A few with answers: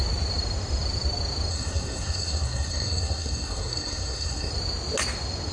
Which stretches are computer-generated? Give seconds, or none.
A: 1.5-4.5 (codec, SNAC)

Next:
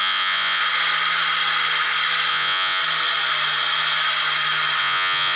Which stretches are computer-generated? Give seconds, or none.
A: 0.0-0.6 (vocoder, Vocos); 2.3-2.8; 4.8-5.4

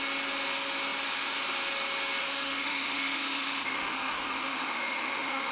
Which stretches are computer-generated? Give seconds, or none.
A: 2.2-5.5 (autoencoder, DAC-VAE)

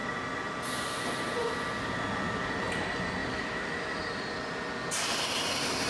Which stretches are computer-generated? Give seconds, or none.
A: none

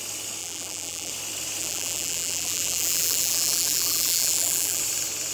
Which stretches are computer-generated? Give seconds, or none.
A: 0.4-1.1 (vocoder, BigVGAN v2); 1.6-4.8